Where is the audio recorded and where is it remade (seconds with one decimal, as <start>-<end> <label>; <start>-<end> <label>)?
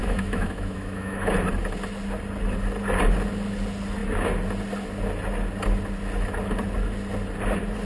0.0-1.3 remade; 1.3-7.9 recorded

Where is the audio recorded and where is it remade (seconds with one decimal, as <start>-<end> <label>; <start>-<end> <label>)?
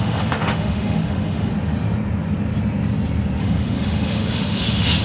0.0-1.5 remade; 1.5-3.4 recorded; 3.4-5.0 remade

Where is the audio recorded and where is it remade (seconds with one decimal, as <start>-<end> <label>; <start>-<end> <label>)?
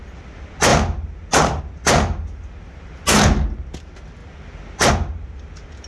0.0-5.9 recorded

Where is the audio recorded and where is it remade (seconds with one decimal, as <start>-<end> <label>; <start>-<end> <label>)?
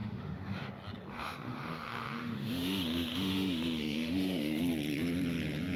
0.0-0.7 remade; 0.7-1.1 recorded; 1.1-4.6 remade; 4.6-5.8 recorded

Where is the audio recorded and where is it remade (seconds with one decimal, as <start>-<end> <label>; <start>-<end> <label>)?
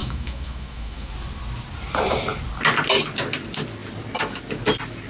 0.0-1.1 remade; 1.1-5.1 recorded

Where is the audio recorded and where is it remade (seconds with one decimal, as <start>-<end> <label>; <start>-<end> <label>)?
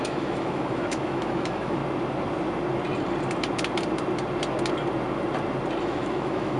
0.0-1.8 remade; 1.8-5.8 recorded; 5.8-6.6 remade